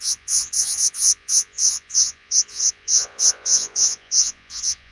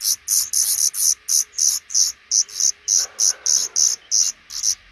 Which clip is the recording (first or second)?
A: second